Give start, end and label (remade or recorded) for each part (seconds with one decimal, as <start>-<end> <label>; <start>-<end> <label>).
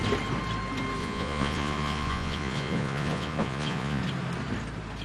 0.0-1.0 recorded; 1.0-4.0 remade; 4.0-5.0 recorded